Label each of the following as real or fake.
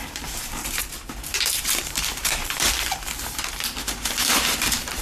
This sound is fake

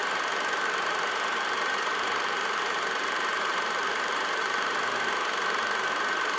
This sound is fake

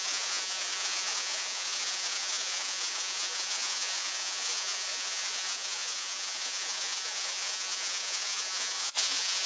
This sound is fake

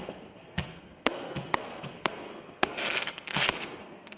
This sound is fake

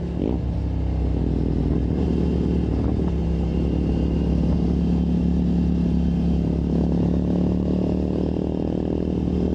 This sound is real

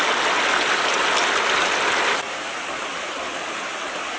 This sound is real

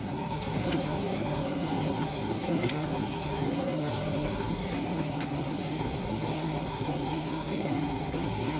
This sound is fake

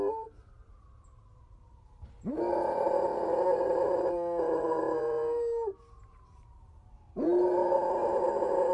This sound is fake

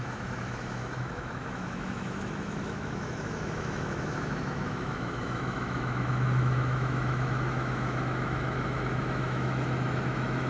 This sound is fake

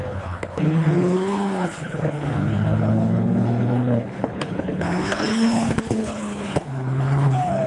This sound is fake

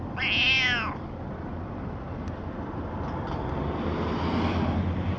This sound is real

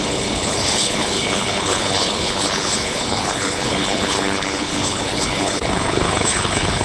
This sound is fake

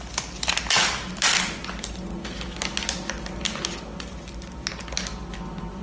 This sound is real